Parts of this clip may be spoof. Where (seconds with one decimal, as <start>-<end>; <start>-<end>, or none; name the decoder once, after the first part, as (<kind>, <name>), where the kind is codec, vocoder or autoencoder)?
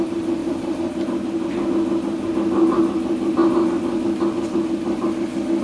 0.4-1.7 (vocoder, BigVGAN v2)